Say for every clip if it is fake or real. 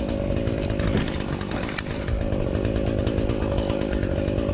real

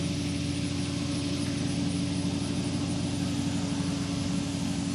real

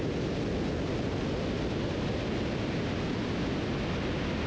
real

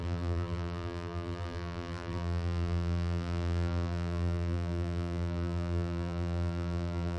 fake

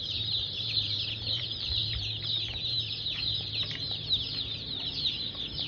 fake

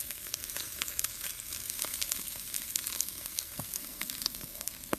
fake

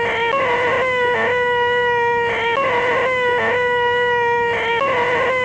real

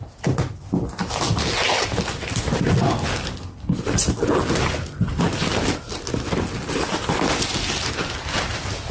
real